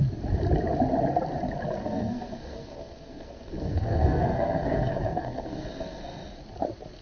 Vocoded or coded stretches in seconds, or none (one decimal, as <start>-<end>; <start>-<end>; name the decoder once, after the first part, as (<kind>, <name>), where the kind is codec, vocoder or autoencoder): 1.8-6.0 (codec, SNAC)